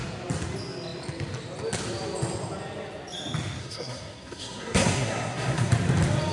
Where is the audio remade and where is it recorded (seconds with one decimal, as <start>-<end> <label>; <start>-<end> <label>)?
0.0-3.6 recorded; 3.6-5.7 remade; 5.7-6.3 recorded